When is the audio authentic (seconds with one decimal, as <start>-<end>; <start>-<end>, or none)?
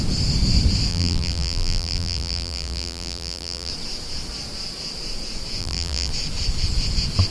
0.0-0.9; 3.7-5.6; 6.1-7.3